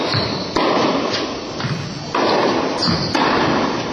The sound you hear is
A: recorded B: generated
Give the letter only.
A